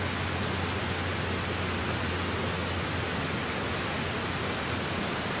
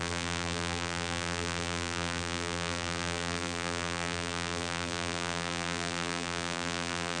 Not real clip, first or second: second